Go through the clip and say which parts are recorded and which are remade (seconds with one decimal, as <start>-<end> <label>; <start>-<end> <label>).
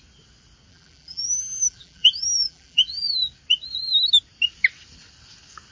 0.0-0.7 recorded; 0.7-3.1 remade; 3.1-5.7 recorded